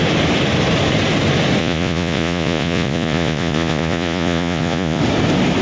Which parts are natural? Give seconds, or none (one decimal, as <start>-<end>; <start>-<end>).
0.0-1.6; 5.0-5.6